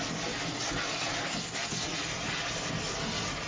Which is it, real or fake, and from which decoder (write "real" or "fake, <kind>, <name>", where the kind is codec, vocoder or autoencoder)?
real